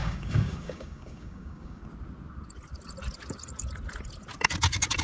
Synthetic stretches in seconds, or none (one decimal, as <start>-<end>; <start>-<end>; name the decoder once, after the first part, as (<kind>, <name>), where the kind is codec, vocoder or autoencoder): 0.0-1.8 (codec, DAC)